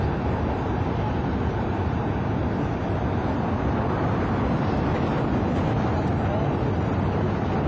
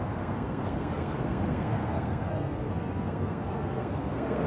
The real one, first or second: first